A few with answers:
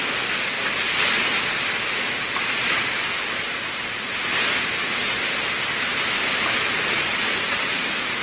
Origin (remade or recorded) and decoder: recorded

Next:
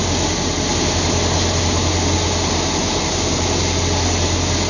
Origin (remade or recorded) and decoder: recorded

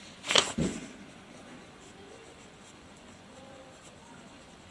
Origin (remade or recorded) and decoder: remade, vocoder, Vocos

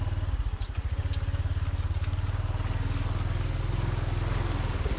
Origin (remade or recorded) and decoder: recorded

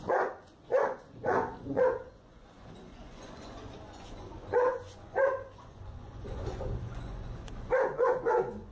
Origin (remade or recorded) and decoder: remade, vocoder, Vocos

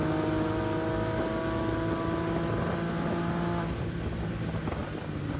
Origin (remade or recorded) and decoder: recorded